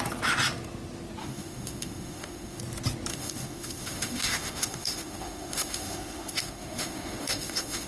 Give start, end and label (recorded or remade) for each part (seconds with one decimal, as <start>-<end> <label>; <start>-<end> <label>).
0.0-1.2 recorded; 1.2-2.6 remade; 2.6-3.1 recorded; 3.1-7.9 remade